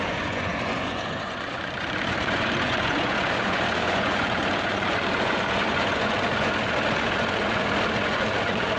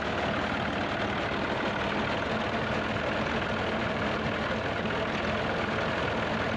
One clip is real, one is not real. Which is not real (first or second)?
first